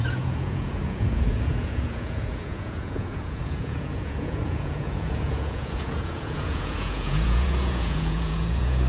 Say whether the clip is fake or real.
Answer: fake